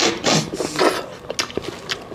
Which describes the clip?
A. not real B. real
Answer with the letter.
B